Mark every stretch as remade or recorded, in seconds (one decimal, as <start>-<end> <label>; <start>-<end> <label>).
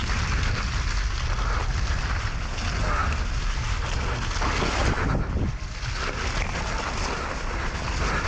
0.0-8.3 recorded